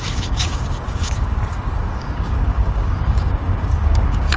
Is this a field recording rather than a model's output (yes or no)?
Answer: no